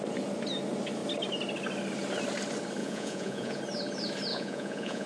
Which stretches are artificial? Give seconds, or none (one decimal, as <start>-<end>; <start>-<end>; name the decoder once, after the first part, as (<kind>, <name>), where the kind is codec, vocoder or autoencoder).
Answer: 2.8-3.6 (vocoder, Vocos); 4.3-5.1

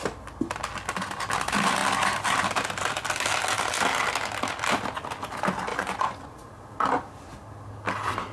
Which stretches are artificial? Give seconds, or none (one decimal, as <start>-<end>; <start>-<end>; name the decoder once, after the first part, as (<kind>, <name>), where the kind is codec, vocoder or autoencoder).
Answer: 5.7-6.3 (vocoder, Vocos)

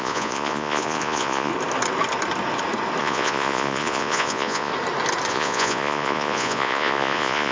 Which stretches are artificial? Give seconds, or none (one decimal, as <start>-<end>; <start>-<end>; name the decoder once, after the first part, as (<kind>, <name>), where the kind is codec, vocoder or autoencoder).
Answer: 0.0-1.5 (vocoder, Vocos); 3.0-4.7; 5.3-7.5

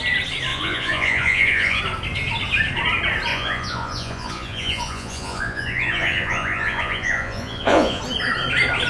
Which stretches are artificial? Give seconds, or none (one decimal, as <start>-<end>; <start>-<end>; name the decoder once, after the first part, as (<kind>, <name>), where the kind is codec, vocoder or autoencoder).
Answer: 0.5-1.8 (vocoder, Vocos); 3.3-8.0

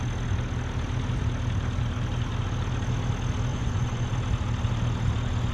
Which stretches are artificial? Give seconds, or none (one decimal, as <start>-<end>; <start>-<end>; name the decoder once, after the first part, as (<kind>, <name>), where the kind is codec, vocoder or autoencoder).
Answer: 3.5-4.1 (vocoder, Vocos)

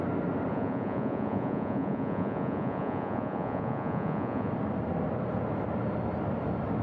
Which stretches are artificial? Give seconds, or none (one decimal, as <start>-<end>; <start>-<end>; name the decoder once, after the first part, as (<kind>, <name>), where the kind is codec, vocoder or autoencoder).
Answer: 0.5-4.5 (vocoder, Vocos)

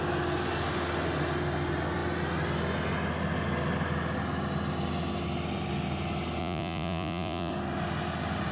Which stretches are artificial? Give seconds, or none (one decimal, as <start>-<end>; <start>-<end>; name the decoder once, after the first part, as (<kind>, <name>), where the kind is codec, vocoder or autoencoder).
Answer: 6.4-7.5 (vocoder, Vocos)

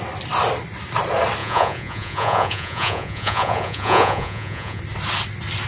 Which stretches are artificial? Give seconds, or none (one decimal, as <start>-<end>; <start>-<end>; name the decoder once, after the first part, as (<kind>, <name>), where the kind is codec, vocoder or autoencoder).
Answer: 1.4-4.8 (vocoder, Vocos)